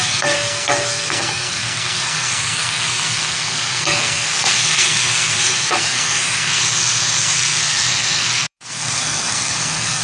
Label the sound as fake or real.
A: fake